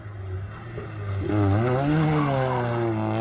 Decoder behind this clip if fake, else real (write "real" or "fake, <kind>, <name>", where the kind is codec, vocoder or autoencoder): real